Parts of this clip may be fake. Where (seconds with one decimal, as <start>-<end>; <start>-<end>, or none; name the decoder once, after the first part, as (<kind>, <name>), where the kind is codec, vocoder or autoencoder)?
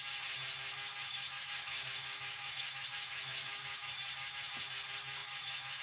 1.1-3.9 (autoencoder, DAC-VAE); 5.2-5.8